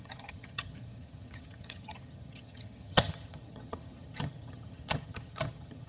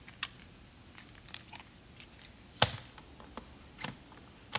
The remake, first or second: first